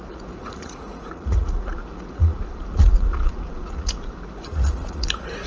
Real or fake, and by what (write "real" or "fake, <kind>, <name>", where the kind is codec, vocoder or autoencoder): fake, vocoder, Vocos